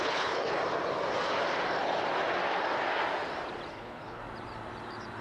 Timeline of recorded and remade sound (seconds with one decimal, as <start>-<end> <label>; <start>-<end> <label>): 0.0-0.6 remade; 0.6-3.7 recorded; 3.7-4.2 remade; 4.2-5.2 recorded